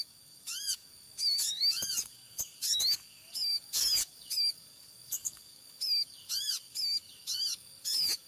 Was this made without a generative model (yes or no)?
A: no